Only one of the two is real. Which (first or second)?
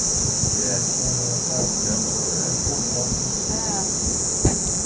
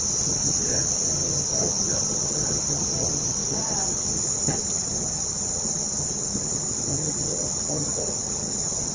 first